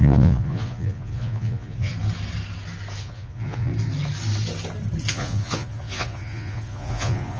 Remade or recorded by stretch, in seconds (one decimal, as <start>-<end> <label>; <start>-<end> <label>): 0.0-1.9 remade; 1.9-3.0 recorded; 3.0-3.7 remade; 3.7-5.1 recorded; 5.1-7.4 remade

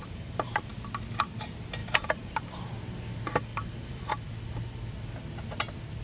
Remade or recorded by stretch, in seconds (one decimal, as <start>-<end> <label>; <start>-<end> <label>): 0.0-0.7 remade; 0.7-1.8 recorded; 1.8-2.7 remade; 2.7-3.5 recorded; 3.5-4.1 remade; 4.1-6.0 recorded

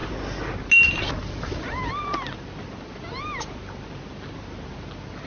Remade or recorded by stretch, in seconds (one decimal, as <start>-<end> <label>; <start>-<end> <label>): 0.0-5.3 recorded

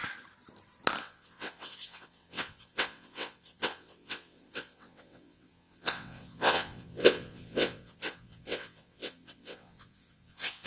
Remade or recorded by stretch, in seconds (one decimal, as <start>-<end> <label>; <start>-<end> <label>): 0.0-1.0 recorded; 1.0-10.7 remade

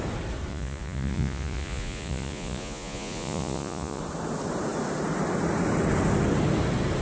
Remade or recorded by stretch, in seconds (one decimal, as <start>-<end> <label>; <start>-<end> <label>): 0.0-0.5 recorded; 0.5-4.0 remade; 4.0-7.0 recorded

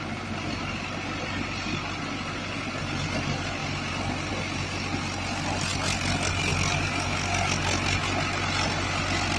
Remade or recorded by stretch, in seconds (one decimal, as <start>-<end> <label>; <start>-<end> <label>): 0.0-9.4 recorded